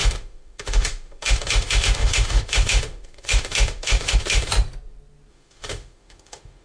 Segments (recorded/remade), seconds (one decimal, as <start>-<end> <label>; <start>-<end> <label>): 0.0-4.5 remade; 4.5-5.3 recorded; 5.3-6.6 remade